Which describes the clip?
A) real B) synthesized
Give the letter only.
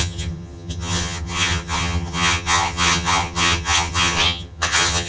B